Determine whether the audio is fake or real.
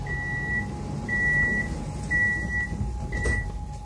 real